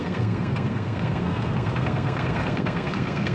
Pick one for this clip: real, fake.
fake